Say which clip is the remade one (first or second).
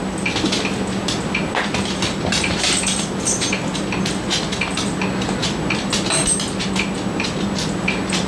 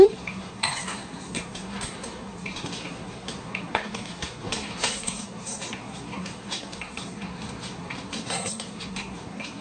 second